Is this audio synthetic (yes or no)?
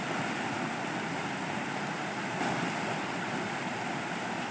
no